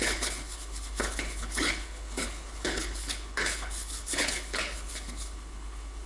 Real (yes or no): no